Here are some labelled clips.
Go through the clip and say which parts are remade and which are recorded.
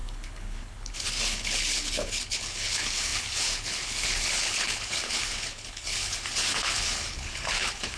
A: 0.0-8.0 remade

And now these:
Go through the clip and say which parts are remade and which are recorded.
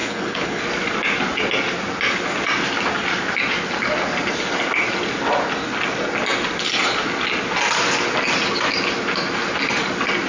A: 0.0-0.6 remade; 0.6-10.3 recorded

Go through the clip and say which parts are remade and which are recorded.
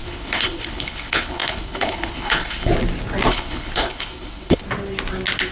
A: 0.0-2.7 remade; 2.7-3.3 recorded; 3.3-4.6 remade; 4.6-5.5 recorded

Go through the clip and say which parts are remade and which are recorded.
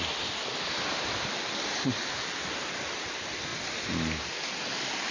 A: 0.0-5.1 recorded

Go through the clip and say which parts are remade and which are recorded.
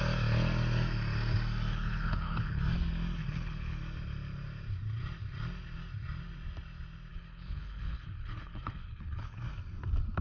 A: 0.0-1.7 recorded; 1.7-2.6 remade; 2.6-3.2 recorded; 3.2-3.8 remade; 3.8-7.1 recorded; 7.1-9.4 remade; 9.4-10.2 recorded